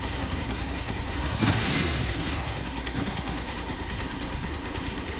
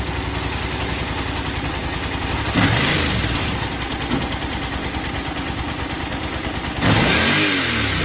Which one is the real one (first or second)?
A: second